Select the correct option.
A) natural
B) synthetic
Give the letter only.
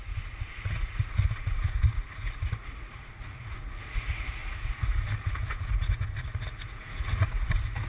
B